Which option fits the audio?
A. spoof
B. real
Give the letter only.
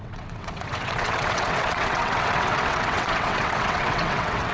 A